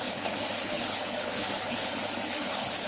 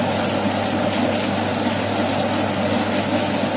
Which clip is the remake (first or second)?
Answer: first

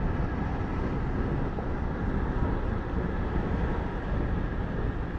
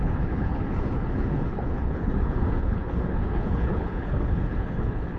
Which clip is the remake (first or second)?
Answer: second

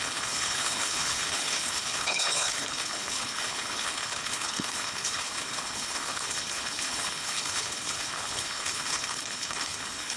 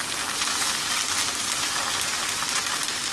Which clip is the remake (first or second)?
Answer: first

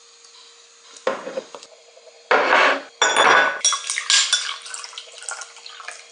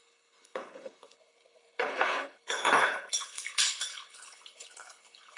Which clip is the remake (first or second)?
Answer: second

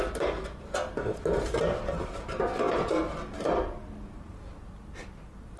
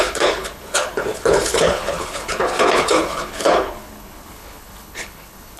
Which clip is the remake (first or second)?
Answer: second